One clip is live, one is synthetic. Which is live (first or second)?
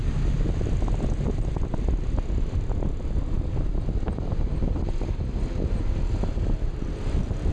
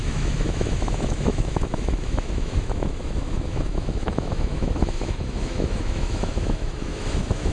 first